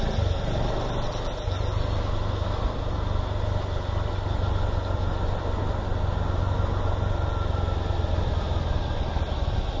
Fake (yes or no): no